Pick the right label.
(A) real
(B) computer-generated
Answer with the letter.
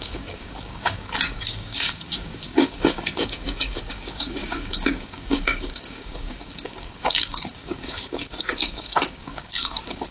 B